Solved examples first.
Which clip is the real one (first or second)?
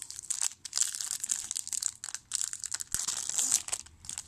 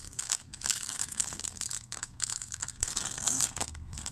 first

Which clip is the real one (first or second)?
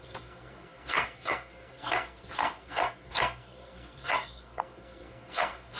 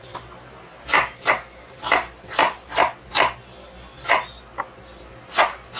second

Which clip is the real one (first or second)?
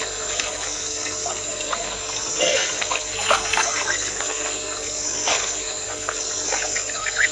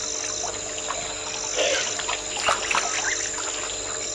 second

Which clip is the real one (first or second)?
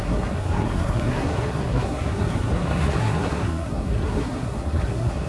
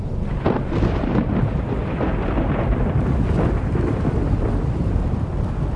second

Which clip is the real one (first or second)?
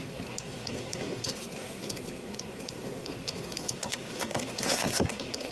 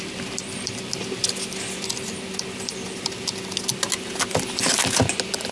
second